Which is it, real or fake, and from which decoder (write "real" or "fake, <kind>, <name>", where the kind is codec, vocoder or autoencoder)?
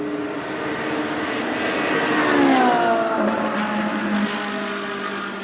real